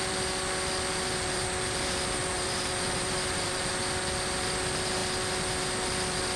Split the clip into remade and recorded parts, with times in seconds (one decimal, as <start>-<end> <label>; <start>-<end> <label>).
0.0-2.2 recorded; 2.2-3.7 remade; 3.7-6.4 recorded